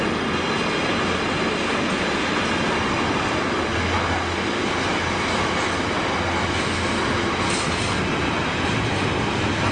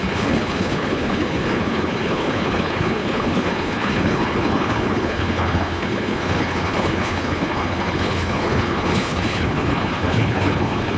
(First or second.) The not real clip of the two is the second